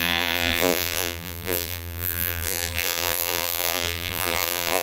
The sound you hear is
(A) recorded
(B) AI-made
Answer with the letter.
B